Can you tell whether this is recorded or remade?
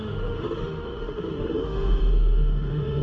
remade